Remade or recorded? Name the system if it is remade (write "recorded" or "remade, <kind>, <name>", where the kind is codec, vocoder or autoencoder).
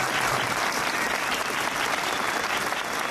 recorded